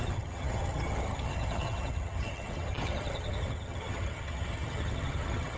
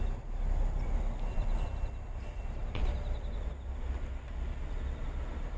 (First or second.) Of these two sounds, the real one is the second